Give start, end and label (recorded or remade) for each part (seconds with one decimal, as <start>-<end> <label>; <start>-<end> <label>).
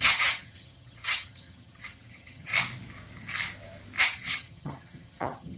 0.0-2.5 remade; 2.5-4.0 recorded; 4.0-5.6 remade